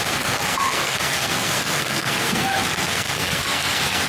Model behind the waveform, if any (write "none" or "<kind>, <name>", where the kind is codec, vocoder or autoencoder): codec, SNAC